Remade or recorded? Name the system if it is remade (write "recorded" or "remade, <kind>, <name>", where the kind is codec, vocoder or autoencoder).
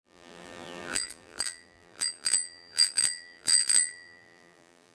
remade, vocoder, BigVGAN v2